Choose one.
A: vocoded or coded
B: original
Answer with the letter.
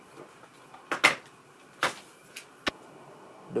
B